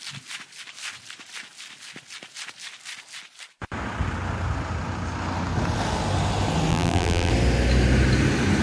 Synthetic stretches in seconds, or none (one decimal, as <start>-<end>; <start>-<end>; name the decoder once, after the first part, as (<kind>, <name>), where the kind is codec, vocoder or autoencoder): 6.7-7.3 (vocoder, BigVGAN v2)